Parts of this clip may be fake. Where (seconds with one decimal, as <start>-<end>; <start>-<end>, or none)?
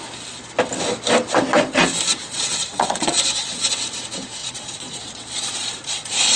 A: 2.2-3.7; 4.4-6.4